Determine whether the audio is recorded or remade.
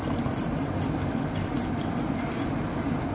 recorded